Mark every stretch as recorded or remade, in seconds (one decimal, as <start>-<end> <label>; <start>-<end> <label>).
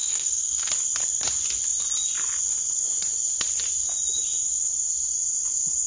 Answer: 0.0-0.7 remade; 0.7-5.9 recorded